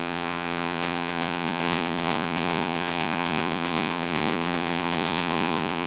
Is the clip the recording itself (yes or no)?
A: no